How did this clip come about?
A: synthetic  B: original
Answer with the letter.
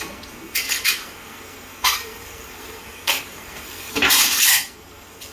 A